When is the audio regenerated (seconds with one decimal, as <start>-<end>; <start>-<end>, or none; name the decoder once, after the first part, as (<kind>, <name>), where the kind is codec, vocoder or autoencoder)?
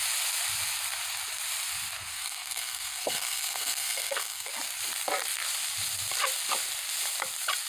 2.1-4.5 (codec, SNAC)